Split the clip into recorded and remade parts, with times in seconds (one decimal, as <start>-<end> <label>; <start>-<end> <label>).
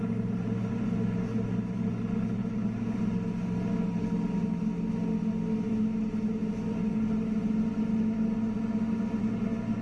0.0-9.8 recorded